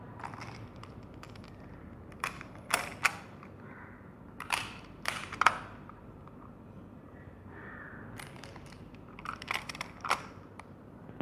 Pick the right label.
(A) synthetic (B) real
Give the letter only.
A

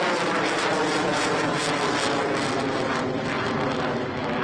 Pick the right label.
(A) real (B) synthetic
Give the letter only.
A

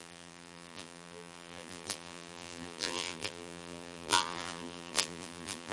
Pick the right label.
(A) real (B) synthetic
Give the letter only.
B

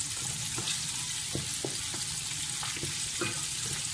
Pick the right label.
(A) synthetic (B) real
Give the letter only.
B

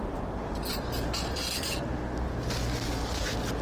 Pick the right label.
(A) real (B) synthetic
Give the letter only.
A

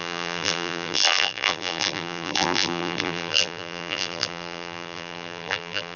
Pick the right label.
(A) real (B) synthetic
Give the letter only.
B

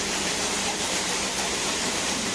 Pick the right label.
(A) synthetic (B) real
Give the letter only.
A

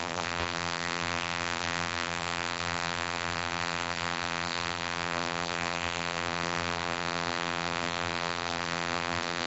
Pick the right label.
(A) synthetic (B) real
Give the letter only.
A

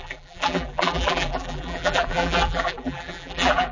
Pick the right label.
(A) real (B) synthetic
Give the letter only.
B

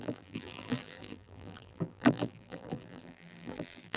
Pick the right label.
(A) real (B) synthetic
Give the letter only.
B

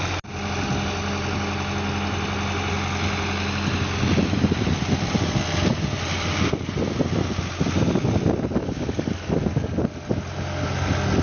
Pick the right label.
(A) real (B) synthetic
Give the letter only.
A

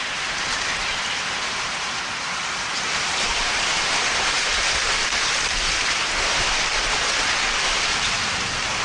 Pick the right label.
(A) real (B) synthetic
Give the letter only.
B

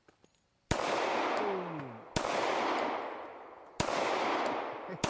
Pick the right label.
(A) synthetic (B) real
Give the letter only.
B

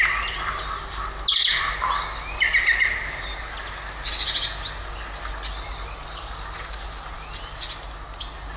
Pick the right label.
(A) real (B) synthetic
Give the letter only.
A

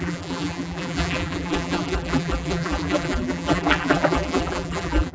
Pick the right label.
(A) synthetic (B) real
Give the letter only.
A